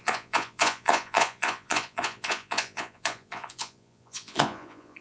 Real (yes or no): no